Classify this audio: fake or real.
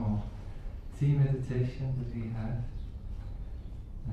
fake